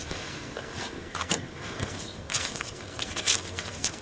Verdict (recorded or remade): remade